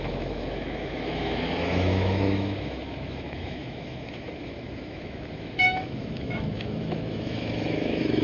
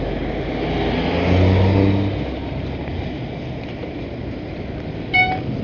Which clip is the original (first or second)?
second